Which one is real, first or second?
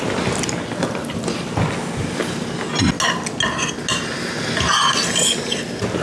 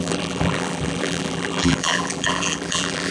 first